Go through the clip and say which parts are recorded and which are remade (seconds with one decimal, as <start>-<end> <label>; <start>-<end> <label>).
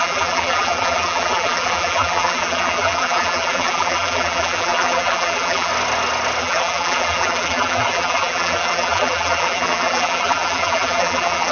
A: 0.0-5.7 remade; 5.7-6.4 recorded; 6.4-11.5 remade